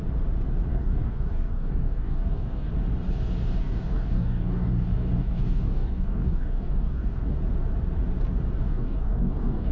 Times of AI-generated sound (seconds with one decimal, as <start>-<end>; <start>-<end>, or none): 0.7-2.7; 3.6-7.4; 8.6-9.7